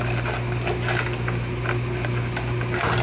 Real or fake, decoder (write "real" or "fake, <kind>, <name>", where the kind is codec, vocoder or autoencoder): real